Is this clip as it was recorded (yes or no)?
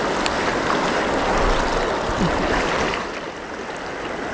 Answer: yes